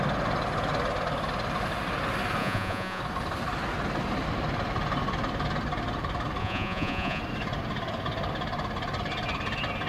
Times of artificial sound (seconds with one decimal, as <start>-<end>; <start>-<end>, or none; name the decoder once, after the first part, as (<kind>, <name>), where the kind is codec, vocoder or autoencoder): 2.4-3.0 (vocoder, Vocos); 6.4-7.2